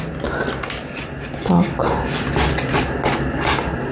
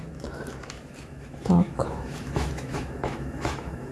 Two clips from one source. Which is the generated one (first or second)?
second